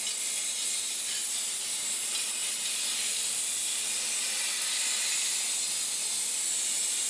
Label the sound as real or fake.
real